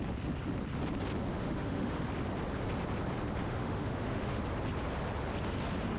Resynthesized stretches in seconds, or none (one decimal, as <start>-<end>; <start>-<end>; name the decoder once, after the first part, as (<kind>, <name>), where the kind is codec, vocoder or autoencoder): 1.3-2.0 (autoencoder, DAC-VAE); 3.4-4.4